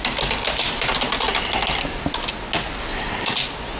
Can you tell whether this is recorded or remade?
recorded